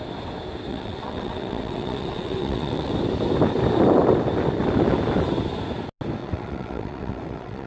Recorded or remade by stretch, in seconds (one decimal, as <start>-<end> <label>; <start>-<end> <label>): 0.0-0.7 recorded; 0.7-2.9 remade; 2.9-6.2 recorded; 6.2-7.7 remade